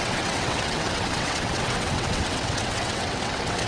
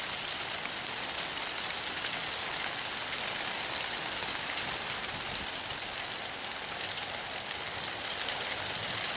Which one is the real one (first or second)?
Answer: second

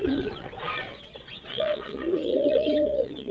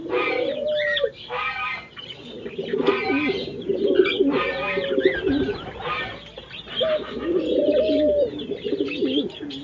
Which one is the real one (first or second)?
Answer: second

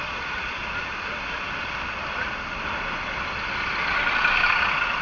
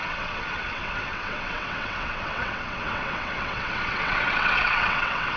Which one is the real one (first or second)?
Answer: first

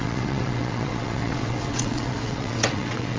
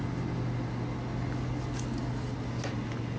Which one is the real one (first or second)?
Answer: second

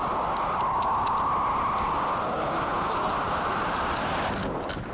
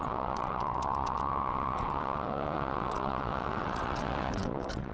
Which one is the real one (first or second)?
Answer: first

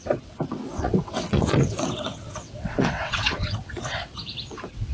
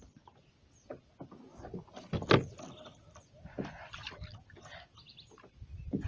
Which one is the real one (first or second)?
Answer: second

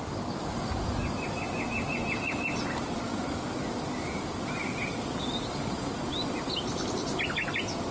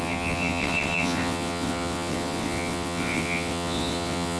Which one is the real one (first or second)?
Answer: first